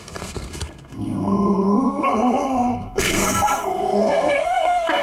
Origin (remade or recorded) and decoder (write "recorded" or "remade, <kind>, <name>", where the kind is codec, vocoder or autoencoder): remade, codec, SNAC